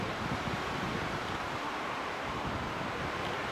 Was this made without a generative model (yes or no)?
no